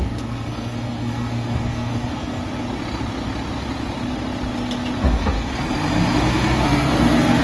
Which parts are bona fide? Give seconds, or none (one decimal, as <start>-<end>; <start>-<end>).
2.4-5.0; 5.5-6.3